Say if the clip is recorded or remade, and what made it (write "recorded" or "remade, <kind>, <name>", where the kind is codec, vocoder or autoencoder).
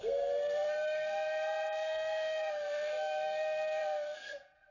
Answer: remade, codec, SNAC